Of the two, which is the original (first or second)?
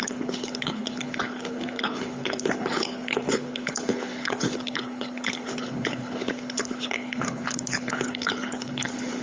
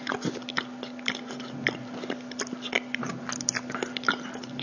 second